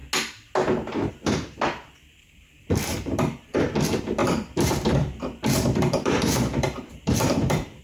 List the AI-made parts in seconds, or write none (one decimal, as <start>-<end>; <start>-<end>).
1.1-7.8